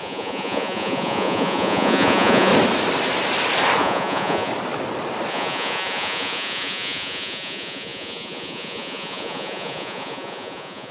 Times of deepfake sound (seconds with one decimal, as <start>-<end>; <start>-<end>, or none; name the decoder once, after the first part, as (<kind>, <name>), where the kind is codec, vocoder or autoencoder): 0.0-2.5 (vocoder, Vocos); 3.8-4.5; 5.3-10.9